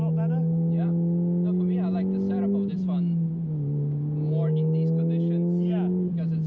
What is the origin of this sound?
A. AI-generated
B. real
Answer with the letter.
B